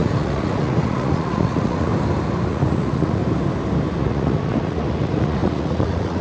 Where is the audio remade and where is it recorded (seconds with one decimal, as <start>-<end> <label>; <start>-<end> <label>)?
0.0-1.9 remade; 1.9-2.5 recorded; 2.5-3.2 remade; 3.2-4.0 recorded; 4.0-6.2 remade